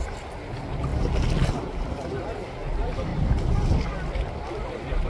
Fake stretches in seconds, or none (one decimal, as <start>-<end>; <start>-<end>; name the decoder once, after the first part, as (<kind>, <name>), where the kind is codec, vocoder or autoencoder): none